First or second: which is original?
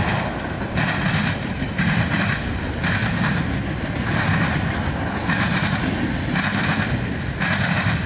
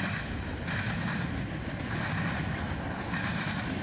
first